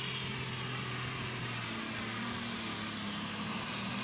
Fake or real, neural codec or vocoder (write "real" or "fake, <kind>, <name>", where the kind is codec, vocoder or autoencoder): real